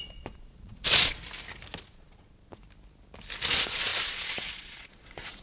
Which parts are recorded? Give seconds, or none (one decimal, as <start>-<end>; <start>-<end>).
1.2-1.9; 2.6-3.5